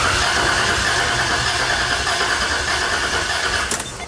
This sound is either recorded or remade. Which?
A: recorded